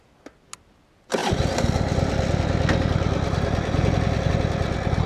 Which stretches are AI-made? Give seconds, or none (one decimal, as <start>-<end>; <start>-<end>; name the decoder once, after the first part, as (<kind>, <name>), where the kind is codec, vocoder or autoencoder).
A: none